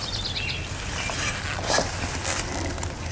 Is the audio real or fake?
real